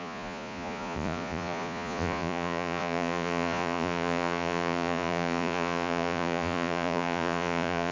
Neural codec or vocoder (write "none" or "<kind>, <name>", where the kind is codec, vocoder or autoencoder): vocoder, Vocos